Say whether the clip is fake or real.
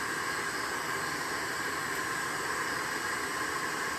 real